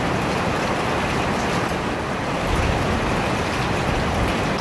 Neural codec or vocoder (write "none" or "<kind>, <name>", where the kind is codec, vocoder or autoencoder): none